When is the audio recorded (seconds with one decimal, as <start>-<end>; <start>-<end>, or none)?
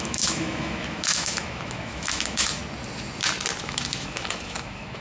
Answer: 2.6-3.6